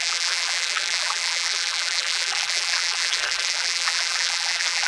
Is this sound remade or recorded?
remade